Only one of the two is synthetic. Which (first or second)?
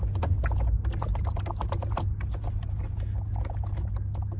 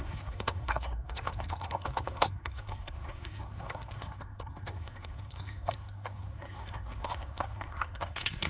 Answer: second